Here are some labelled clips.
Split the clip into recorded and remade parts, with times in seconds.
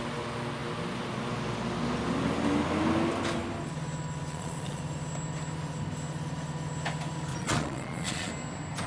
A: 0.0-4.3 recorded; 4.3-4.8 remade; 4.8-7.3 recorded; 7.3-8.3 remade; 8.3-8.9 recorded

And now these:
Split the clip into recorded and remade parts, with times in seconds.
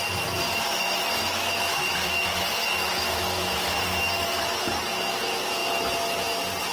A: 0.0-0.7 recorded; 0.7-4.7 remade; 4.7-6.7 recorded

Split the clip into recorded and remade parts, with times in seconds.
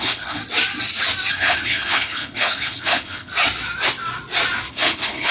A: 0.0-0.4 remade; 0.4-1.3 recorded; 1.3-3.3 remade; 3.3-4.7 recorded; 4.7-5.3 remade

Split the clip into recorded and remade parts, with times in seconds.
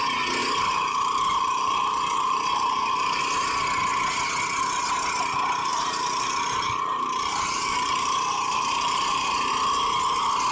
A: 0.0-0.4 recorded; 0.4-3.2 remade; 3.2-5.7 recorded; 5.7-9.5 remade; 9.5-10.5 recorded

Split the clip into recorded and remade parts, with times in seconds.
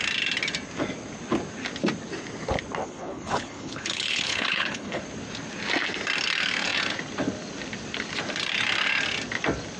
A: 0.0-2.8 recorded; 2.8-5.0 remade; 5.0-9.8 recorded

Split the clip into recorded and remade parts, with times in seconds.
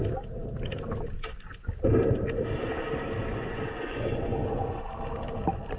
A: 0.0-3.3 recorded; 3.3-4.8 remade; 4.8-5.8 recorded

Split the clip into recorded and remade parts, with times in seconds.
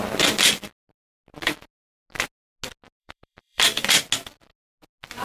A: 0.0-3.0 recorded; 3.0-4.0 remade; 4.0-5.2 recorded